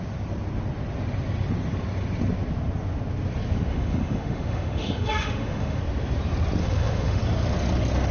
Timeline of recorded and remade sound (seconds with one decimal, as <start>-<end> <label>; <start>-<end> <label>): 0.0-3.7 recorded; 3.7-5.8 remade; 5.8-6.6 recorded; 6.6-7.2 remade; 7.2-8.1 recorded